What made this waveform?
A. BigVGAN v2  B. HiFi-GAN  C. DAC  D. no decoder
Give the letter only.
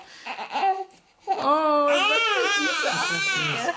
D